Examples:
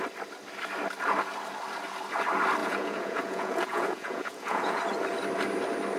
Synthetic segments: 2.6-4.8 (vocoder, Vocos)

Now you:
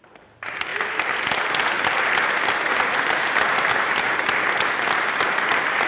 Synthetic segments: none

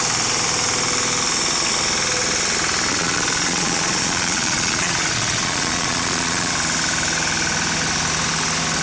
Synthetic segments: 2.9-6.5 (vocoder, Vocos)

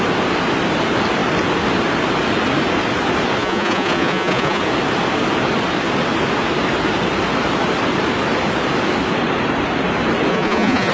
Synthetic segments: 3.4-4.6 (vocoder, Vocos); 10.3-10.9

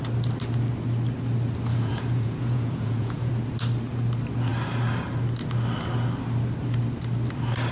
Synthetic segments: 1.7-3.3 (vocoder, Vocos)

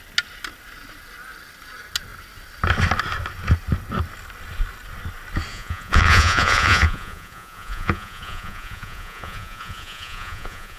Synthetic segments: 5.5-10.8 (vocoder, Vocos)

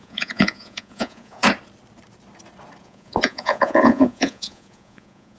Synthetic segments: 0.0-1.4 (vocoder, Vocos); 2.8-5.4